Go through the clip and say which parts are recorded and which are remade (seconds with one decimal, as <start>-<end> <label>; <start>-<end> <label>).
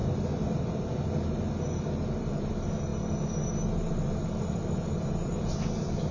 0.0-2.2 recorded; 2.2-2.9 remade; 2.9-3.8 recorded; 3.8-6.1 remade